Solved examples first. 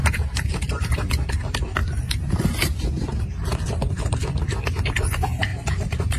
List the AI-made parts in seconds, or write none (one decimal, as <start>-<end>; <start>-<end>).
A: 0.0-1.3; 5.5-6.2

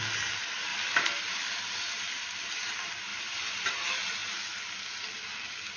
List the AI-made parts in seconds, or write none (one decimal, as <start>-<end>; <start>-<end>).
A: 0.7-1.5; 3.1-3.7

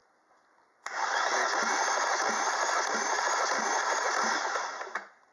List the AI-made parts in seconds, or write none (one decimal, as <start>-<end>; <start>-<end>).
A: none